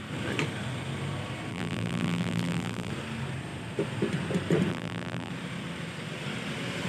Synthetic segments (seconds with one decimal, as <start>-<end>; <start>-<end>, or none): 1.5-2.9; 4.7-5.3